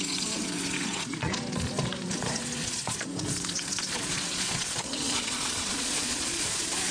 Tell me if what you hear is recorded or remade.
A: remade